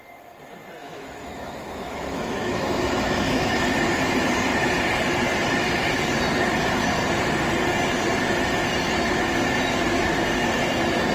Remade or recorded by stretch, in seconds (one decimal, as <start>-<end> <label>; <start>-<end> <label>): 0.0-0.8 recorded; 0.8-3.5 remade; 3.5-11.1 recorded